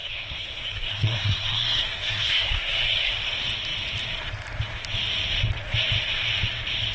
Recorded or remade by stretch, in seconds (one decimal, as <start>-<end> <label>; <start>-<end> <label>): 0.0-3.1 remade; 3.1-6.9 recorded